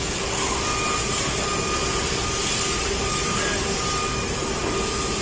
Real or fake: real